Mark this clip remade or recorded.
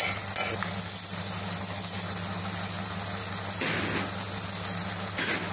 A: recorded